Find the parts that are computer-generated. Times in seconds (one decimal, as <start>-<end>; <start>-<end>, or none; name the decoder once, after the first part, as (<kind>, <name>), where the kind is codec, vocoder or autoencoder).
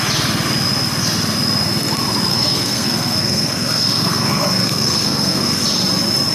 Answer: 2.3-5.6 (codec, SNAC)